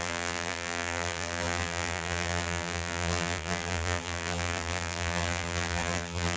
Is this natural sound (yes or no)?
no